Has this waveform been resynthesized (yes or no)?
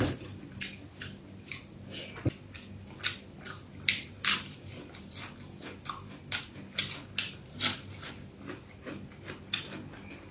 no